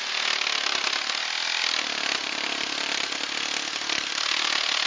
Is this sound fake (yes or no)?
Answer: no